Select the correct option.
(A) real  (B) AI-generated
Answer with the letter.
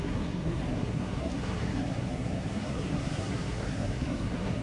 B